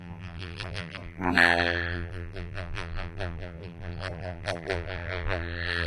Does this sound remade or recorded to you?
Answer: remade